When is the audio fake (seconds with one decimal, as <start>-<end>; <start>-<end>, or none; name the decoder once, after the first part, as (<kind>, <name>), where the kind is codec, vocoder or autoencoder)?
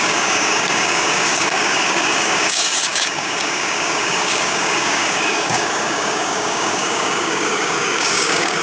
0.0-8.6 (codec, DAC)